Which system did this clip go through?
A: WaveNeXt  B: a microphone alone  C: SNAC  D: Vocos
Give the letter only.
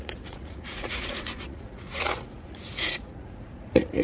D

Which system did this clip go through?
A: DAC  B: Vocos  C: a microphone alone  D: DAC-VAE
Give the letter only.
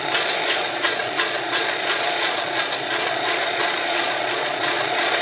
B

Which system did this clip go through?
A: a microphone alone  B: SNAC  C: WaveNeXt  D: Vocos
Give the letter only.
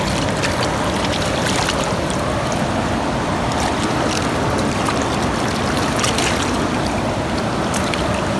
A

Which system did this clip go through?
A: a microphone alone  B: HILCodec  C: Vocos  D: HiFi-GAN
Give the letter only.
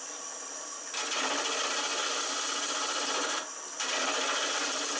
A